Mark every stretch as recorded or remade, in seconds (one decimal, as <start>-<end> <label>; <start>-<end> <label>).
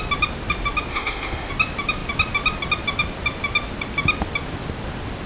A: 0.0-0.9 recorded; 0.9-1.5 remade; 1.5-5.3 recorded